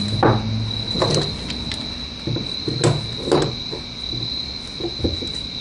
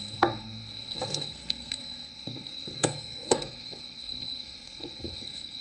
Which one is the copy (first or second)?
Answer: second